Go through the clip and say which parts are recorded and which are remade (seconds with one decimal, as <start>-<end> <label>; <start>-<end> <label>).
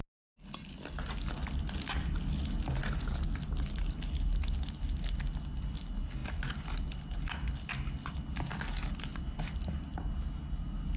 0.0-9.1 recorded; 9.1-10.1 remade; 10.1-11.0 recorded